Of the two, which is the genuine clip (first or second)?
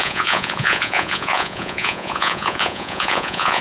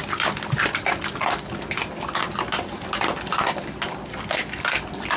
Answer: second